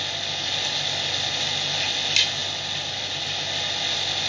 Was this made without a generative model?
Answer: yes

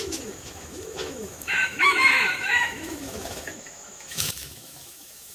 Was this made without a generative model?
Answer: no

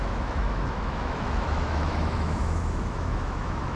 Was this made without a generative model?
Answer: no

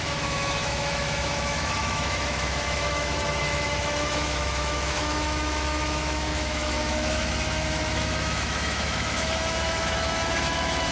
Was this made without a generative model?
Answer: no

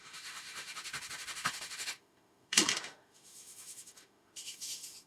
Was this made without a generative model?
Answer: no